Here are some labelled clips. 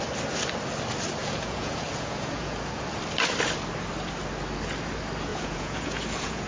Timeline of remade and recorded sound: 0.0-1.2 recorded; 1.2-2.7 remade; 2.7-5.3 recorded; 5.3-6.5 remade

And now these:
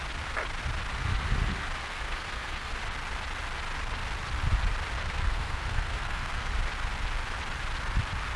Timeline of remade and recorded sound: 0.0-1.8 recorded; 1.8-2.7 remade; 2.7-5.0 recorded; 5.0-6.5 remade; 6.5-8.4 recorded

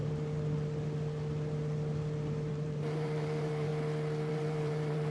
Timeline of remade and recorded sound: 0.0-2.5 recorded; 2.5-3.7 remade; 3.7-4.3 recorded; 4.3-5.1 remade